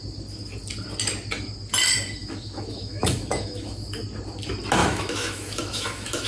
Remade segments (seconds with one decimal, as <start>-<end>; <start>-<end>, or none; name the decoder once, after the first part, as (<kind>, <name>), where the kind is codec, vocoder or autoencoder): 2.2-4.0 (autoencoder, DAC-VAE); 4.8-6.3